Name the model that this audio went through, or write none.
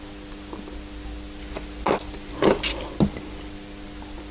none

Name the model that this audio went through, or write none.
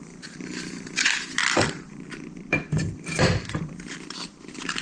vocoder, BigVGAN v2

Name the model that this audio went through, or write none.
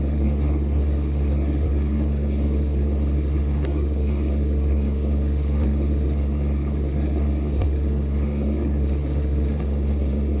codec, SNAC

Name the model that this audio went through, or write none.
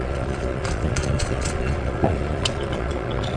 vocoder, Vocos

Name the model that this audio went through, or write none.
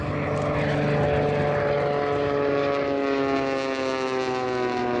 none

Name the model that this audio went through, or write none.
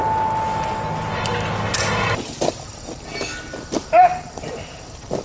none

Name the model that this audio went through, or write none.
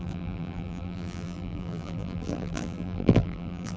vocoder, BigVGAN v2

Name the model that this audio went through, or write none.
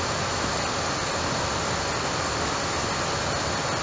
none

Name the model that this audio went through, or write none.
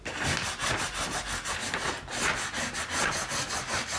none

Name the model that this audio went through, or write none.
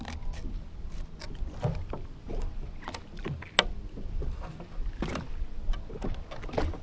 none